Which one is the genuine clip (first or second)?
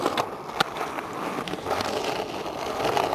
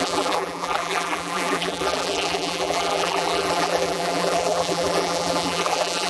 first